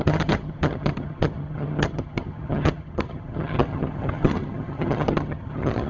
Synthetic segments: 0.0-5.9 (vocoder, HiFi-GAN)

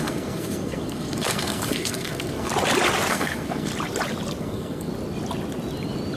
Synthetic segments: 0.0-2.5 (codec, SNAC); 3.1-3.7; 4.4-4.9

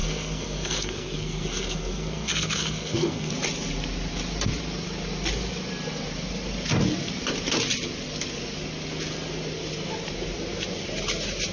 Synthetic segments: 0.0-3.3 (codec, SNAC)

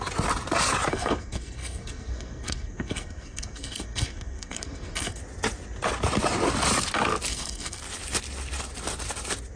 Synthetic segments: 0.9-5.2 (codec, SNAC); 7.3-7.8

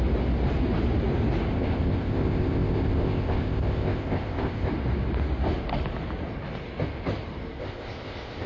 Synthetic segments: 1.5-4.7 (codec, ZipCodec); 7.6-8.5

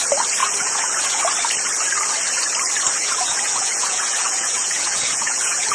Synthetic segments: 0.4-1.2 (vocoder, Vocos); 3.0-5.7

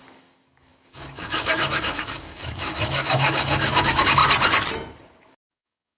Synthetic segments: 0.0-4.2 (codec, DAC); 5.3-6.0

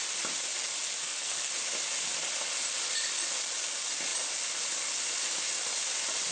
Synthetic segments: 1.0-1.5 (codec, SNAC)